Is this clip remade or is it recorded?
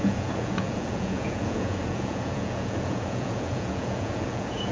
remade